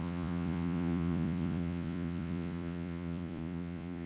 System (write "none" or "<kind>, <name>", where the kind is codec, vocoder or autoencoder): vocoder, Vocos